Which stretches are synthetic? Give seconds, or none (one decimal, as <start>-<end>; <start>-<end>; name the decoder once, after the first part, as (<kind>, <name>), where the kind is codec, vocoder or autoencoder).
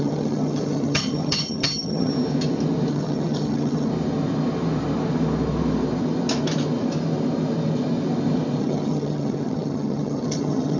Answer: 0.0-2.1 (vocoder, HiFi-GAN); 2.9-3.9; 8.6-10.8